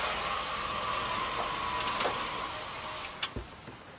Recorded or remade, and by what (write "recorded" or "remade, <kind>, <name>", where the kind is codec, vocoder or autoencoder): recorded